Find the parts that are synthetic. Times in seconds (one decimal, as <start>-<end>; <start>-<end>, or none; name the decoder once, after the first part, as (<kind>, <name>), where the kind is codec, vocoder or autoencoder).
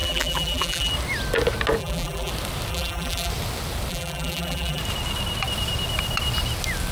0.0-0.9 (vocoder, BigVGAN v2); 1.8-2.3; 2.7-3.3; 3.9-4.8